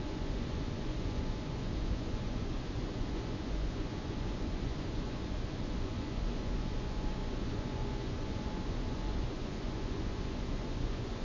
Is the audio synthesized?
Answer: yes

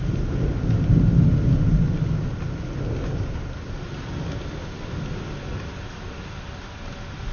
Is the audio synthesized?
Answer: no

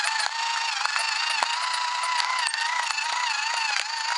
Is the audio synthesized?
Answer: no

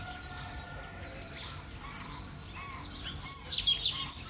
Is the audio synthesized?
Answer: no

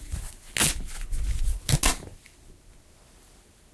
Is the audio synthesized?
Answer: no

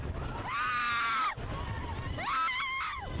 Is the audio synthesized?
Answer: no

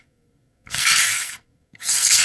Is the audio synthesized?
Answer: yes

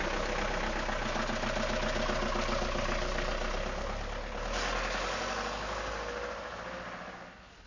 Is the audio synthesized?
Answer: no